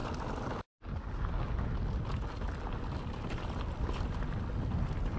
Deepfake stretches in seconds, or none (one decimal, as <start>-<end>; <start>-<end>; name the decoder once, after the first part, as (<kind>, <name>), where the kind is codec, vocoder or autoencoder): none